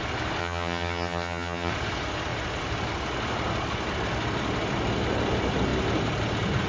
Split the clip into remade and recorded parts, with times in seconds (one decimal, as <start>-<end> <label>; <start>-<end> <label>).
0.0-0.4 recorded; 0.4-1.7 remade; 1.7-6.7 recorded